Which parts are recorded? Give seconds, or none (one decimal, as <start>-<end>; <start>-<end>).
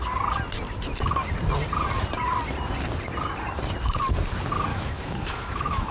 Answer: 0.0-4.7